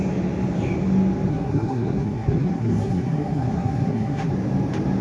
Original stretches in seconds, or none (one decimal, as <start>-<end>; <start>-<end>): 0.0-1.3; 4.3-5.0